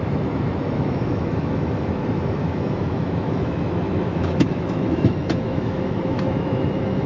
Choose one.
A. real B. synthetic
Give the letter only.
B